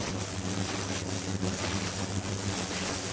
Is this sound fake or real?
real